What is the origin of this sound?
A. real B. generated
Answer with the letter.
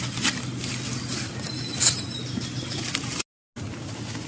A